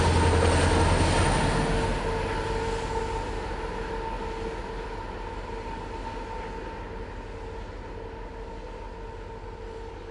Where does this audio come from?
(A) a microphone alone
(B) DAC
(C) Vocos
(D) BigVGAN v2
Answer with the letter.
A